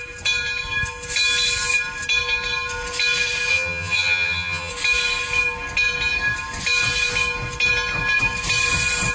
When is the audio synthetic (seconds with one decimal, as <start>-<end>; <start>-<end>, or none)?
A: 3.5-4.7